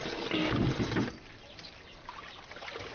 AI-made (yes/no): no